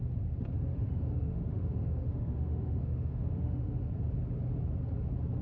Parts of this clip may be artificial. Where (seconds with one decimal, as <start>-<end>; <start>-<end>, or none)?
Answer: 0.7-3.9